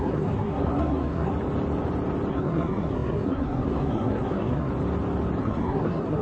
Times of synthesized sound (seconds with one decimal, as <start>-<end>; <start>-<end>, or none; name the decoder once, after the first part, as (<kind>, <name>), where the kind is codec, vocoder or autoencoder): 0.0-1.3 (codec, SNAC); 2.3-4.7; 5.4-6.2

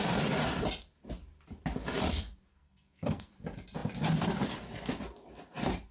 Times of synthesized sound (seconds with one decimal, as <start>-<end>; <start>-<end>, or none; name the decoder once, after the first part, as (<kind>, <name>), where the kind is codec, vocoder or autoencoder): 2.5-3.3 (codec, SNAC)